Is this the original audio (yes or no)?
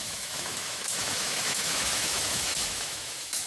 no